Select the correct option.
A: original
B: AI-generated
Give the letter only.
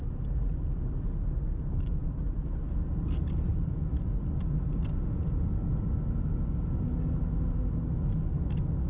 A